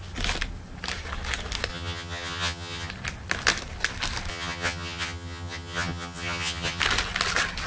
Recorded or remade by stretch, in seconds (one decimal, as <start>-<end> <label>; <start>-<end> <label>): 0.0-1.7 recorded; 1.7-2.9 remade; 2.9-4.3 recorded; 4.3-6.8 remade; 6.8-7.7 recorded